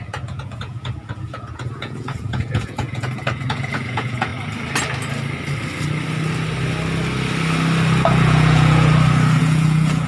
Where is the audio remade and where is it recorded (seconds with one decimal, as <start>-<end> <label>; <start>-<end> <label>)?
0.0-4.3 remade; 4.3-8.2 recorded; 8.2-8.9 remade; 8.9-9.4 recorded; 9.4-10.1 remade